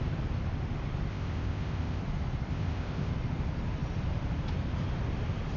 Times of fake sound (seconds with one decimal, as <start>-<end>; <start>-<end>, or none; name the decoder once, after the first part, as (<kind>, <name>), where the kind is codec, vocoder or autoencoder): 1.1-2.0 (codec, ZipCodec); 2.5-3.1